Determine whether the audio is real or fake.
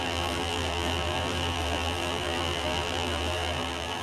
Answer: fake